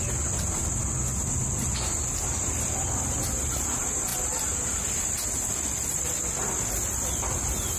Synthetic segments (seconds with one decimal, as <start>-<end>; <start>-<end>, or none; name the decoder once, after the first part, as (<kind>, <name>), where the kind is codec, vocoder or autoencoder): none